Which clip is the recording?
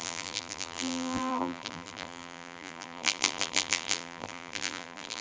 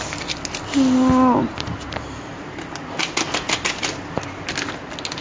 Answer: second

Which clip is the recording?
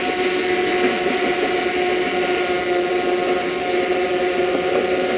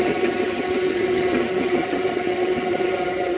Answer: first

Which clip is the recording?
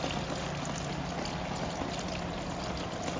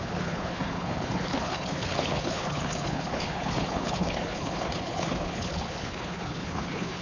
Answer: first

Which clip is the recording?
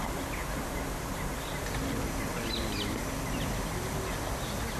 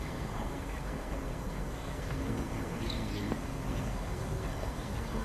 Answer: first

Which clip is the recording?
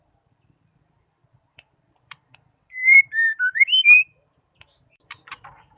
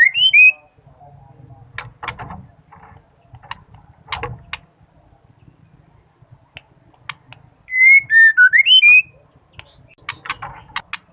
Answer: second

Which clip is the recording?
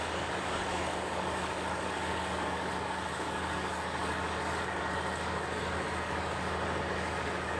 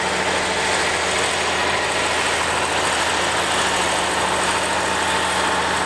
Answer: second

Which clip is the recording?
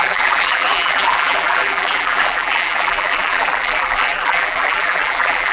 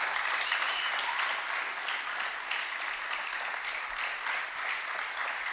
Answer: second